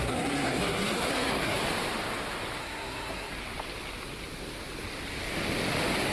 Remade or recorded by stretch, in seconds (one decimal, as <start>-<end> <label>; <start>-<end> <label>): 0.0-1.6 remade; 1.6-2.6 recorded; 2.6-3.3 remade; 3.3-6.1 recorded